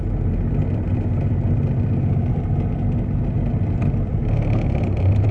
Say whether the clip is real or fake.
real